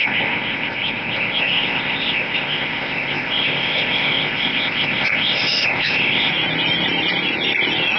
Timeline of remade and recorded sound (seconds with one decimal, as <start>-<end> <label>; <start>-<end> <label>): 0.0-6.3 remade; 6.3-8.0 recorded